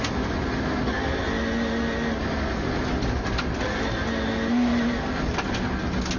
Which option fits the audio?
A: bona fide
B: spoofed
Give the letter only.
A